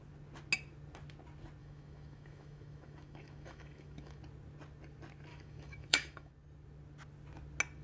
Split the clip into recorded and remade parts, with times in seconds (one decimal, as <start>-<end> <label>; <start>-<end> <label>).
0.0-1.6 recorded; 1.6-4.2 remade; 4.2-5.3 recorded; 5.3-6.3 remade; 6.3-7.8 recorded